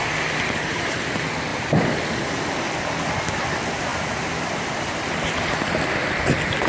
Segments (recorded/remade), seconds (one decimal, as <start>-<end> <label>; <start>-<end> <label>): 0.0-6.7 recorded